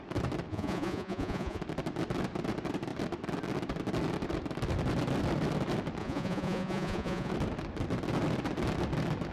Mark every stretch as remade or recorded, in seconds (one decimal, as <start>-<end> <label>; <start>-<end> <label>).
0.0-0.5 recorded; 0.5-1.6 remade; 1.6-6.0 recorded; 6.0-7.3 remade; 7.3-9.3 recorded

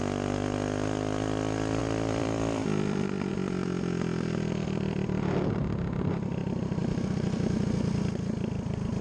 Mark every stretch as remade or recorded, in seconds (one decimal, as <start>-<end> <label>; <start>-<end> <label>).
0.0-1.8 recorded; 1.8-3.3 remade; 3.3-9.0 recorded

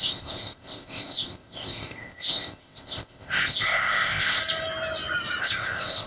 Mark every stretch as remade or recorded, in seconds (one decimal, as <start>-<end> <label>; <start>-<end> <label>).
0.0-4.4 remade; 4.4-5.4 recorded; 5.4-6.1 remade

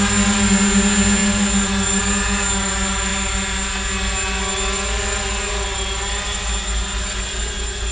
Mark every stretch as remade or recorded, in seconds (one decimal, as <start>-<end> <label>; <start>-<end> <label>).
0.0-7.9 recorded

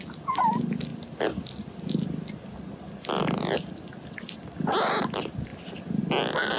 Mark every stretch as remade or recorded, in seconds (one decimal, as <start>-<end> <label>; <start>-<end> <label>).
0.0-6.6 recorded

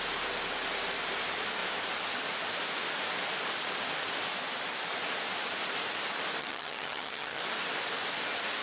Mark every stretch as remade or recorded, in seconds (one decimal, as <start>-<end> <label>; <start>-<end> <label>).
0.0-6.4 recorded; 6.4-7.4 remade; 7.4-8.6 recorded

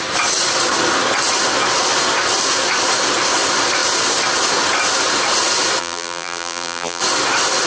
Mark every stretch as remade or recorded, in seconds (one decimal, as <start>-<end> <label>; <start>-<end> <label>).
0.0-5.8 recorded; 5.8-7.0 remade; 7.0-7.7 recorded